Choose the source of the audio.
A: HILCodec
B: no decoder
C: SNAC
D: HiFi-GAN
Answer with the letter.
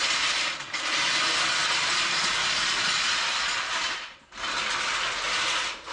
B